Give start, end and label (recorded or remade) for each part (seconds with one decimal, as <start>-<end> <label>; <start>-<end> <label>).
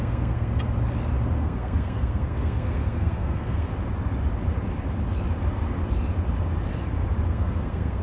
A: 0.0-0.5 remade; 0.5-1.4 recorded; 1.4-3.7 remade; 3.7-7.3 recorded; 7.3-8.0 remade